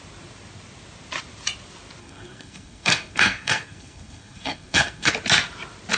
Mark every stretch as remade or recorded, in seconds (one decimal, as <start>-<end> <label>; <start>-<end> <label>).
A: 0.0-2.0 recorded; 2.0-5.1 remade; 5.1-6.0 recorded